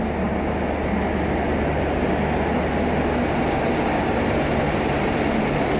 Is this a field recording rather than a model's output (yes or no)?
yes